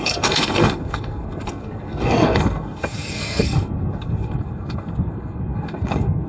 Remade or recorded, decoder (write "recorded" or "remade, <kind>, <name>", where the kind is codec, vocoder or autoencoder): remade, codec, SNAC